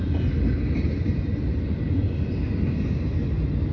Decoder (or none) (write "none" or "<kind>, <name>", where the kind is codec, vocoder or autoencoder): none